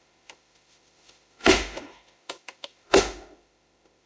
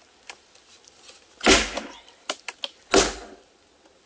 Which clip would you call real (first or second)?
second